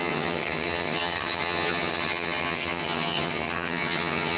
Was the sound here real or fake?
fake